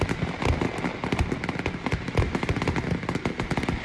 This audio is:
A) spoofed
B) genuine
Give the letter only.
B